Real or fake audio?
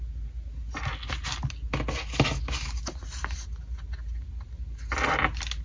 real